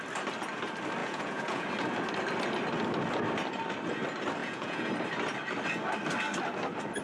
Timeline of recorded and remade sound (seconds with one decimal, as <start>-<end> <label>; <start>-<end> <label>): 0.0-1.0 recorded; 1.0-1.7 remade; 1.7-4.4 recorded; 4.4-4.9 remade; 4.9-7.0 recorded